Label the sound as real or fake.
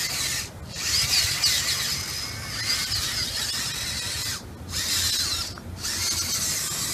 real